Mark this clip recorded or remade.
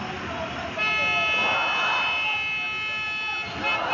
recorded